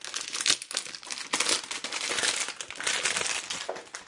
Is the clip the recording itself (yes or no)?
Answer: yes